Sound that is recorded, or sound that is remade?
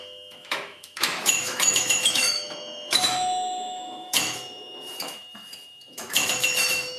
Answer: remade